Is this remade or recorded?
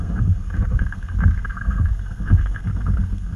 remade